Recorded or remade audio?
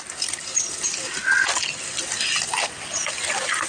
recorded